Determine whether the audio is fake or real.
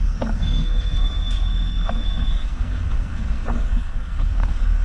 fake